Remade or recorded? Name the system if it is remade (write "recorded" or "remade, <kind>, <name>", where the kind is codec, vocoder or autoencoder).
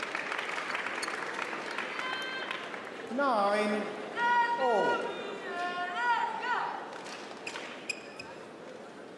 recorded